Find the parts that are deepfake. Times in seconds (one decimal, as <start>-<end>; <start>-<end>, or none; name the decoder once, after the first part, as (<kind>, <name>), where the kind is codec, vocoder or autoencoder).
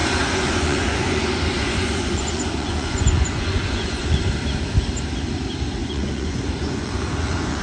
0.0-4.2 (vocoder, Vocos); 5.8-7.6